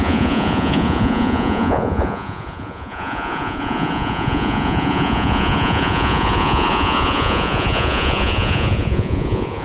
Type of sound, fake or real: fake